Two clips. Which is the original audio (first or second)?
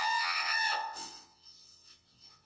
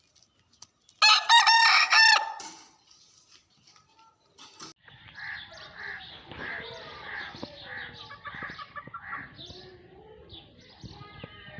second